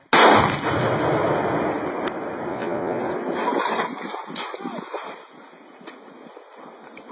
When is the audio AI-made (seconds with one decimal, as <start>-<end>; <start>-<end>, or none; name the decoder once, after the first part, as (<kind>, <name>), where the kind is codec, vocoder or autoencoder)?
2.5-3.0 (vocoder, Vocos)